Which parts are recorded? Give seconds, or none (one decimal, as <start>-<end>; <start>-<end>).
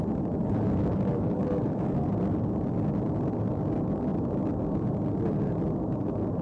0.0-0.4; 2.1-6.4